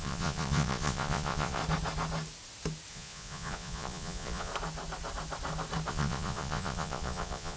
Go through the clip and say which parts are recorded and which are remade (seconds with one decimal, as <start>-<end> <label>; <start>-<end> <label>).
0.0-1.6 remade; 1.6-2.9 recorded; 2.9-4.5 remade; 4.5-5.9 recorded; 5.9-7.6 remade